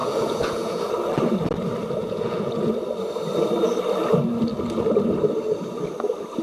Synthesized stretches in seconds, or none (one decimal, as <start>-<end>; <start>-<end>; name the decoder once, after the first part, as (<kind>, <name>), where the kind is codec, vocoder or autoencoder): 0.0-0.9 (vocoder, Vocos); 2.0-2.7